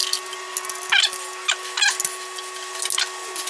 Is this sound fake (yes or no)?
no